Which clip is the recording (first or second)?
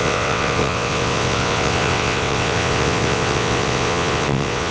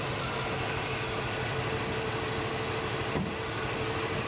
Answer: second